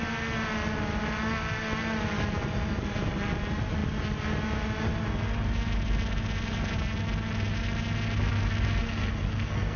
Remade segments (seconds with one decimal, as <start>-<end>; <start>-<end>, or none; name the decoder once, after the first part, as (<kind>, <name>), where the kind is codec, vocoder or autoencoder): 8.8-9.8 (codec, SNAC)